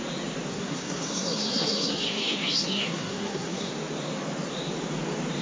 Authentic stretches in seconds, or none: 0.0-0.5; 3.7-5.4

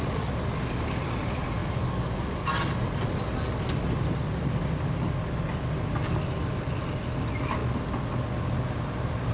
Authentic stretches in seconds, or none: 0.0-9.3

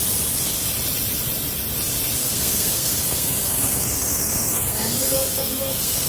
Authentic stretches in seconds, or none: 0.0-2.2

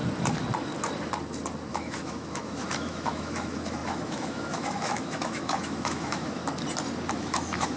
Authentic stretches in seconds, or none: 0.0-1.7; 6.4-7.1

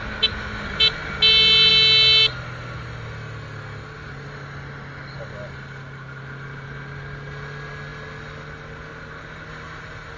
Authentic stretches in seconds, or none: 0.0-8.9; 9.4-10.2

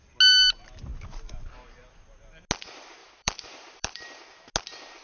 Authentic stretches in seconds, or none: 0.0-3.0; 4.2-5.0

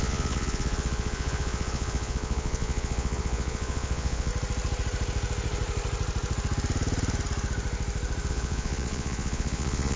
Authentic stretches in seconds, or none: 4.3-8.3

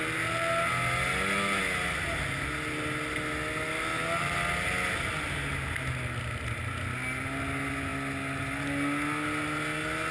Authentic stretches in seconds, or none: 0.0-10.1